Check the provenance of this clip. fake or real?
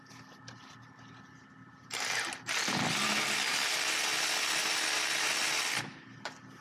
real